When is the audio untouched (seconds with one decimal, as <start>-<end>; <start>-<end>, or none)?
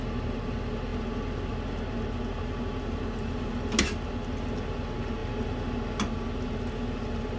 0.0-7.4